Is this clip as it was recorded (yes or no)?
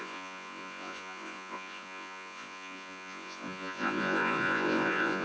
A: no